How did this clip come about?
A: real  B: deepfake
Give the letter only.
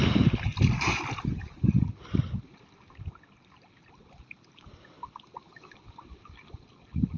A